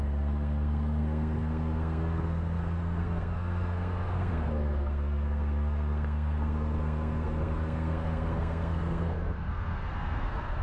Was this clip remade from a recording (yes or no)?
yes